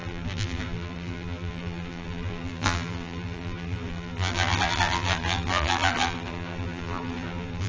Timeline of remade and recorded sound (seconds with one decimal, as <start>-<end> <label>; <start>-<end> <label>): 0.0-7.7 remade